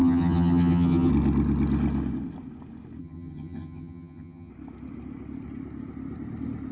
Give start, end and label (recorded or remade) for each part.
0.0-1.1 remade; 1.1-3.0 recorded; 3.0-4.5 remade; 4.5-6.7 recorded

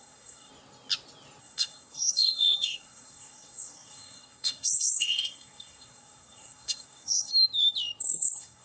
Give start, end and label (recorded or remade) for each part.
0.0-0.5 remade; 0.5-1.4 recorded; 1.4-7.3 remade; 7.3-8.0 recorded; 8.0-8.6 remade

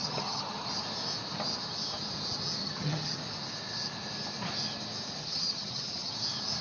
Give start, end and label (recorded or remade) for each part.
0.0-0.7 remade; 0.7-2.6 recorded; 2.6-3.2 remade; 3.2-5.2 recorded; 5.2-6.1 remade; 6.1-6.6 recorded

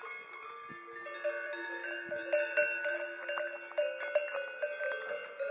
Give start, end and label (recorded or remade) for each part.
0.0-5.5 recorded